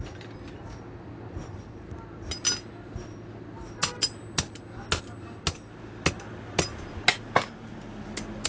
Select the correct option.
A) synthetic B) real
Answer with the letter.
B